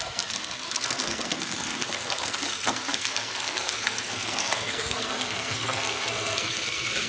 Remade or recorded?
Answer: remade